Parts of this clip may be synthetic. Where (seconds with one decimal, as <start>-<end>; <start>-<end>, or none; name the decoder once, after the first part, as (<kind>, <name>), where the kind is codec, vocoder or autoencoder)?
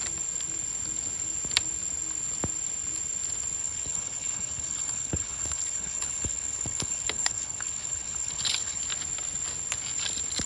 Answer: 3.6-8.8 (codec, HILCodec)